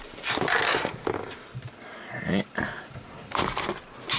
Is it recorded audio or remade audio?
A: recorded